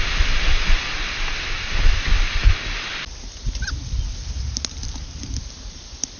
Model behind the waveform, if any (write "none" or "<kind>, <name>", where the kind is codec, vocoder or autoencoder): none